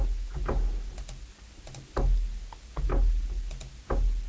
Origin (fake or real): real